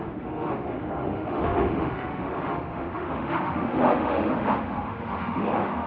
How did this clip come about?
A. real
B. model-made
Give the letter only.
B